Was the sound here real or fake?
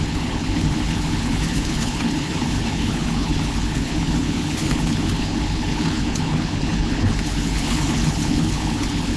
fake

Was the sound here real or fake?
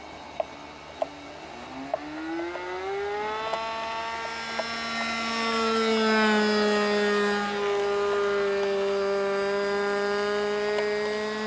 real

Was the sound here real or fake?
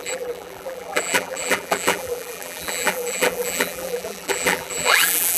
fake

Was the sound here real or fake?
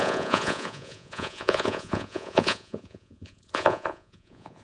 fake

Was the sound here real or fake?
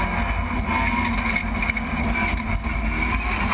real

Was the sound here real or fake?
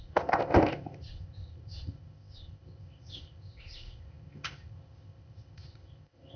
fake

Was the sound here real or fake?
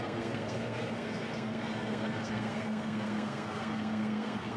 fake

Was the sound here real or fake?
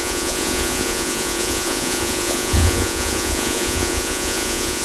fake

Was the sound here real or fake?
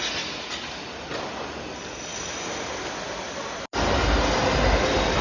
real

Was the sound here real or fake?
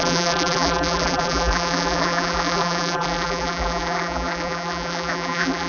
fake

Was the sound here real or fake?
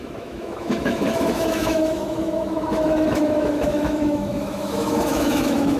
fake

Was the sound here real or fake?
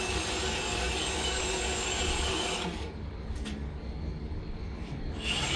fake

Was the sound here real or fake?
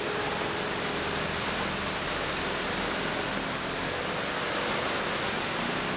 real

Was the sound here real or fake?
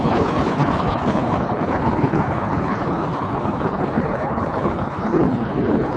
fake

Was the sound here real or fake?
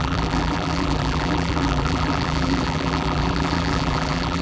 fake